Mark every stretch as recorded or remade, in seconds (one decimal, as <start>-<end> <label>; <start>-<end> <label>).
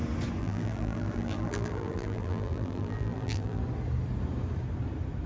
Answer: 0.0-0.4 recorded; 0.4-3.6 remade; 3.6-5.3 recorded